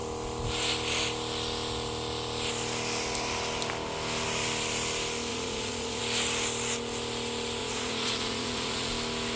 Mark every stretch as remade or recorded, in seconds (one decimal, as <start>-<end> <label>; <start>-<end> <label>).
0.0-5.3 recorded; 5.3-6.0 remade; 6.0-7.6 recorded; 7.6-8.9 remade; 8.9-9.4 recorded